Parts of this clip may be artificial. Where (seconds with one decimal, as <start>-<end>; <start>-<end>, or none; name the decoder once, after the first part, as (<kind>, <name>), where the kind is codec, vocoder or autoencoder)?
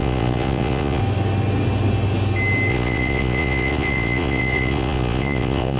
0.0-1.0 (vocoder, Vocos); 2.7-5.8